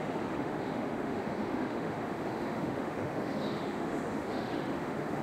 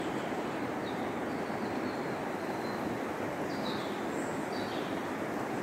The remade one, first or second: first